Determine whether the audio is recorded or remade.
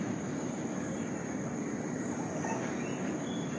recorded